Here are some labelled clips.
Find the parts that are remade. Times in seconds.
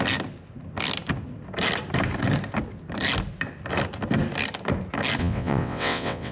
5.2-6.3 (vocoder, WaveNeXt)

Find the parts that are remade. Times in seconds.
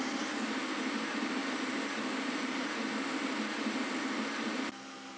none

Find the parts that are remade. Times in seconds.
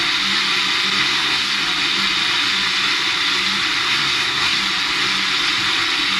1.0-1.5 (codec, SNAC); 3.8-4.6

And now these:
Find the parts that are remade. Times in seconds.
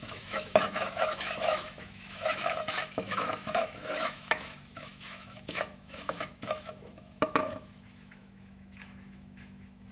0.0-9.9 (autoencoder, DAC-VAE)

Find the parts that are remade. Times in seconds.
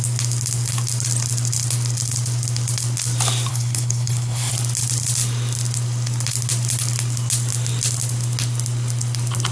3.5-4.5 (codec, HILCodec)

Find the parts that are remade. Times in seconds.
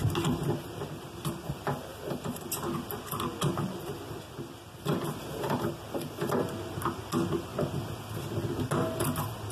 none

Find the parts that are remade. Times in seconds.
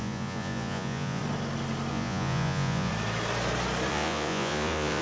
0.0-1.2 (vocoder, Vocos); 1.9-2.9; 3.9-5.0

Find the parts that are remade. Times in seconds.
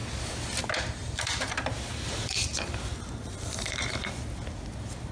1.0-4.1 (vocoder, BigVGAN v2)